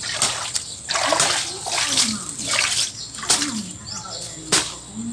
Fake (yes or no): no